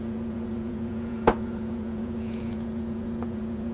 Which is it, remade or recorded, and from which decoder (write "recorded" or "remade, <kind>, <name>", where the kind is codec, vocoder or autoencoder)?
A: remade, vocoder, Vocos